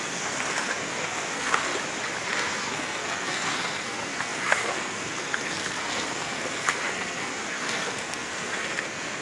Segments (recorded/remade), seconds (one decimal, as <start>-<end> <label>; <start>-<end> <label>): 0.0-1.7 remade; 1.7-2.3 recorded; 2.3-9.2 remade